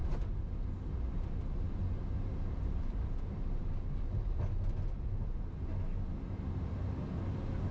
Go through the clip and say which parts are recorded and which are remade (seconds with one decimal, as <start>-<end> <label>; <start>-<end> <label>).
0.0-7.7 recorded